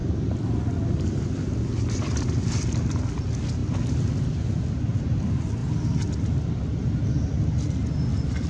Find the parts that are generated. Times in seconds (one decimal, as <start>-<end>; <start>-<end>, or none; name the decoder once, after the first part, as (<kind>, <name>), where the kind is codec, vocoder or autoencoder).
none